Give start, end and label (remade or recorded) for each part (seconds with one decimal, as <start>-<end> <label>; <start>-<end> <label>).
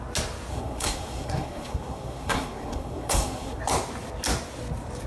0.0-0.5 recorded; 0.5-3.6 remade; 3.6-5.1 recorded